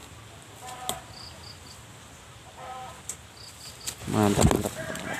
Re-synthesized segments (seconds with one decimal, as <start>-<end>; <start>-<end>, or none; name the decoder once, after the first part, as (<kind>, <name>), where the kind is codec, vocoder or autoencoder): none